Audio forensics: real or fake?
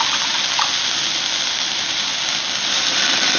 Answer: real